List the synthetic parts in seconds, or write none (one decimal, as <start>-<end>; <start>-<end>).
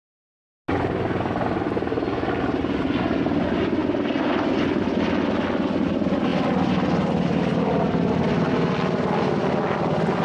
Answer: none